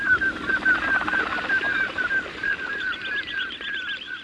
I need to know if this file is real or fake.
fake